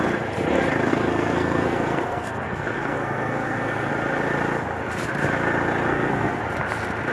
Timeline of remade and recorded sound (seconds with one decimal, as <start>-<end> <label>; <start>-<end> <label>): 0.0-0.9 recorded; 0.9-3.9 remade; 3.9-5.9 recorded; 5.9-6.4 remade; 6.4-7.1 recorded